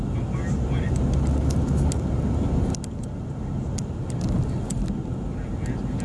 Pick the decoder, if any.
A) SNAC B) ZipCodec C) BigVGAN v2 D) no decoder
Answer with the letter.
D